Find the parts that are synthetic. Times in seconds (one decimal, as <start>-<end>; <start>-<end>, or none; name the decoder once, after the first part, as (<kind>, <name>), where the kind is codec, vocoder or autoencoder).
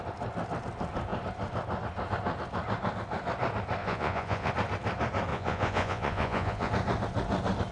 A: 3.8-4.5 (vocoder, Vocos); 5.3-6.7